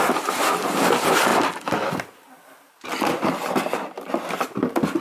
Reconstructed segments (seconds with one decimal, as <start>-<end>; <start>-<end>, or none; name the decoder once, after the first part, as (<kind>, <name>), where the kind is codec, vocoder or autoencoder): none